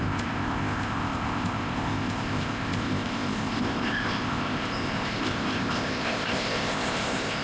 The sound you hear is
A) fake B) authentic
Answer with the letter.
A